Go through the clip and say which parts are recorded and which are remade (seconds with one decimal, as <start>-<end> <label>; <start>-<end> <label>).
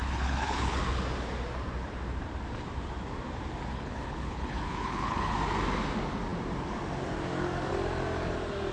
0.0-0.8 remade; 0.8-3.7 recorded; 3.7-5.3 remade; 5.3-8.7 recorded